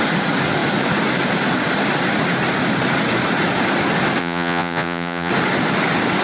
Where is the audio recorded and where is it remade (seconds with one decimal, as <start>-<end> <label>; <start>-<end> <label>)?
0.0-4.2 recorded; 4.2-5.3 remade; 5.3-6.2 recorded